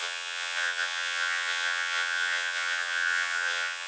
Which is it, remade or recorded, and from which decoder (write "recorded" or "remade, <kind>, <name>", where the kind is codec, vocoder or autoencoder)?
remade, vocoder, WaveNeXt